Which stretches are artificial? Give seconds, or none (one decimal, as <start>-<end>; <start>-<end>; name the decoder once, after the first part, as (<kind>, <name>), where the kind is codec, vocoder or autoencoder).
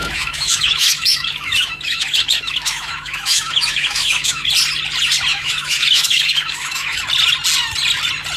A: 0.0-4.5 (autoencoder, DAC-VAE); 5.3-7.0